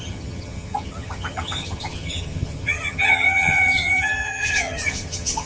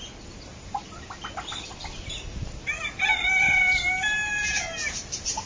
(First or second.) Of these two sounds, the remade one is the first